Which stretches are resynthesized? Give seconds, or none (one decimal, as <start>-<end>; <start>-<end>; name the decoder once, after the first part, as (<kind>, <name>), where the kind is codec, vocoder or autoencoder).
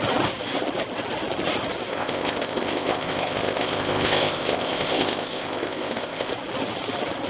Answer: 1.9-6.3 (codec, ZipCodec)